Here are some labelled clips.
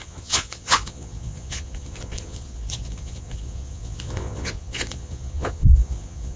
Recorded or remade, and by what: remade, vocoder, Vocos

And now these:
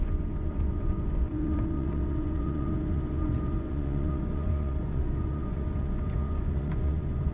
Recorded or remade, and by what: remade, vocoder, Vocos